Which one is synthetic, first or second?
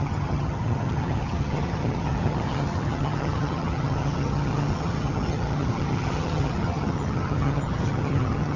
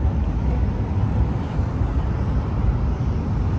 first